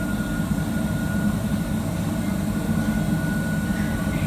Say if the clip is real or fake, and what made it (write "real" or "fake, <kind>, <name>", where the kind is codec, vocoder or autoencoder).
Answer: real